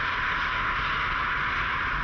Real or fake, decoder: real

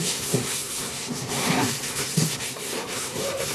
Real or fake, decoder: fake, codec, SNAC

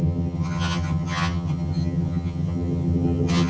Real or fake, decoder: fake, vocoder, HiFi-GAN